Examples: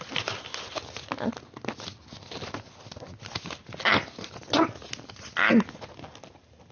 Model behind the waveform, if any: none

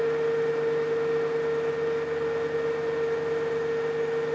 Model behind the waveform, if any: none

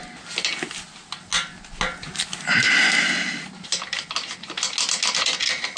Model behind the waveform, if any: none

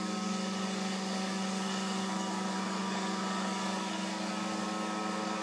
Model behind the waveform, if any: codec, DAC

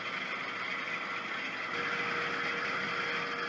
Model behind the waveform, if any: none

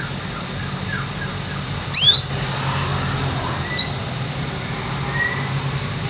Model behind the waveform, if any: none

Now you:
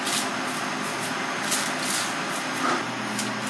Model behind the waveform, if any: none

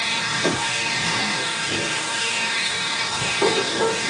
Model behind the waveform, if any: codec, DAC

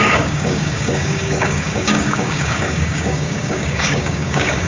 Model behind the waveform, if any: codec, DAC